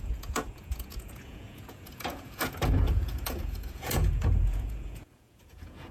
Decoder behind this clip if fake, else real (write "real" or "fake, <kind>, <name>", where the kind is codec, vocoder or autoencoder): fake, vocoder, Vocos